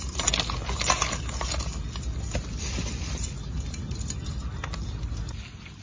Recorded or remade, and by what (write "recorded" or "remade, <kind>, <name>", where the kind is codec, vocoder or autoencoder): recorded